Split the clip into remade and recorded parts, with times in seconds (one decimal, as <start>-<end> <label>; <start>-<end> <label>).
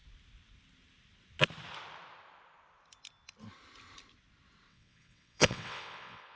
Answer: 0.0-4.7 recorded; 4.7-6.4 remade